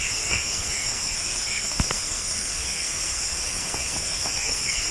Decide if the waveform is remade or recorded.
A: remade